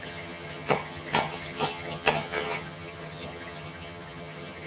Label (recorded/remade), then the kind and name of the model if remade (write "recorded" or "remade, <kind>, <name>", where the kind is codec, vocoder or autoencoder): remade, vocoder, HiFi-GAN